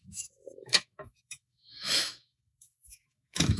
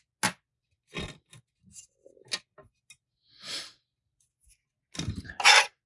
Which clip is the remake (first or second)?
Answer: first